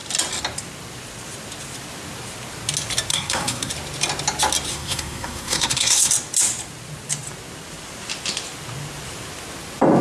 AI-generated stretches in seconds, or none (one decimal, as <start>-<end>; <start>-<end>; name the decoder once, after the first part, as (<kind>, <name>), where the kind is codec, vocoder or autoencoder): 3.1-3.7 (codec, SNAC); 4.7-6.1